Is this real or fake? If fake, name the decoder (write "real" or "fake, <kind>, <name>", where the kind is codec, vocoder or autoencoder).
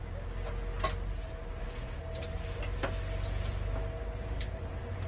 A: real